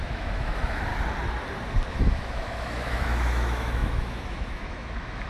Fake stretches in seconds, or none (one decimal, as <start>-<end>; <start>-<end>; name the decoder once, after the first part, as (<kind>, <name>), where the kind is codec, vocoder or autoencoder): 0.0-0.9 (autoencoder, DAC-VAE); 1.9-5.3